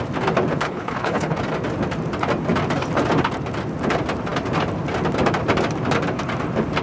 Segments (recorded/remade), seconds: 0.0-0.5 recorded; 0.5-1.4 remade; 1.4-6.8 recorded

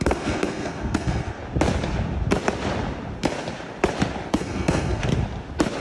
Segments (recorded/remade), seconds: 0.0-1.4 remade; 1.4-4.3 recorded; 4.3-5.0 remade; 5.0-5.8 recorded